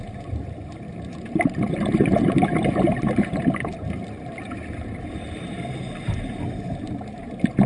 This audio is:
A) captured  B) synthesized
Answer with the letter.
B